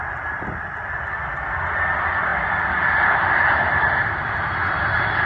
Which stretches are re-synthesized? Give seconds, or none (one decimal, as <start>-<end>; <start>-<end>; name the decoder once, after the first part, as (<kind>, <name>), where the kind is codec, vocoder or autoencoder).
none

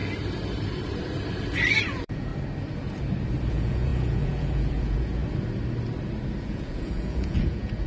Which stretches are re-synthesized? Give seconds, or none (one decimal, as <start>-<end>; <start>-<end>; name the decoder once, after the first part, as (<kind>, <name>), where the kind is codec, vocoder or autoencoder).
1.8-2.3 (vocoder, Vocos); 3.5-5.2; 6.4-7.9

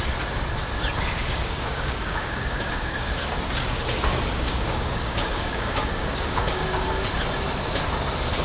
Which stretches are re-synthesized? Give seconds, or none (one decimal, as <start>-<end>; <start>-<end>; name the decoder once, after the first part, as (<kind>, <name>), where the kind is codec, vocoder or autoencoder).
1.2-3.3 (codec, DAC); 4.3-7.0

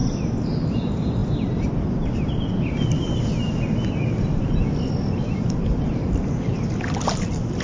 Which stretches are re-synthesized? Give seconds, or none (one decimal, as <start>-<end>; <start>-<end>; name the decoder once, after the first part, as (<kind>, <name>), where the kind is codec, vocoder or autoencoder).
none

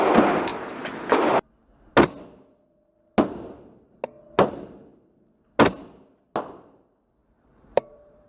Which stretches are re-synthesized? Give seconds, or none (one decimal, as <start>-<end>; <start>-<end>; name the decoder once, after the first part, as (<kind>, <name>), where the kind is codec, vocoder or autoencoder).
7.2-8.3 (vocoder, BigVGAN v2)